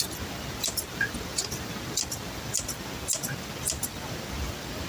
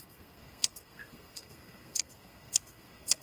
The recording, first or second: first